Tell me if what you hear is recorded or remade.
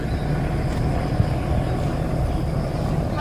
recorded